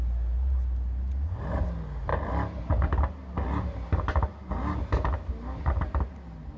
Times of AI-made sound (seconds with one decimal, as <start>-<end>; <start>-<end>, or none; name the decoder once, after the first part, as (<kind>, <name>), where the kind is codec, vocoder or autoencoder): none